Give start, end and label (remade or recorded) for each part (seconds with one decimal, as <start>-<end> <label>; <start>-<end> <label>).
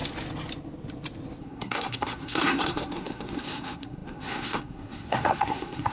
0.0-1.4 recorded; 1.4-5.9 remade